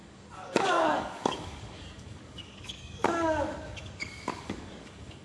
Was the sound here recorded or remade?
remade